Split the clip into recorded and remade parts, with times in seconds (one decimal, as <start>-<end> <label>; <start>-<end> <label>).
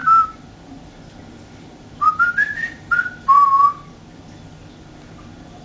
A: 0.0-5.6 recorded